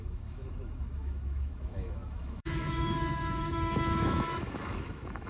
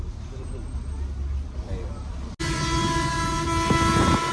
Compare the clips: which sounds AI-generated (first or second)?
first